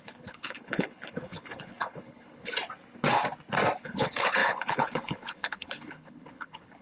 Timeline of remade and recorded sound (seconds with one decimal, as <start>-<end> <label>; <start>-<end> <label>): 0.0-2.5 remade; 2.5-3.8 recorded; 3.8-6.8 remade